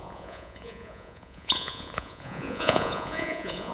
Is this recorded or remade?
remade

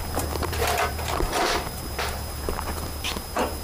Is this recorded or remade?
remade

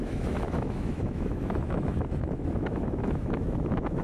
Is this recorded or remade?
remade